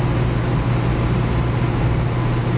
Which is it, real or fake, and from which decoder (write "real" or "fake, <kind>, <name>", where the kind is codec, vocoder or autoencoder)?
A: real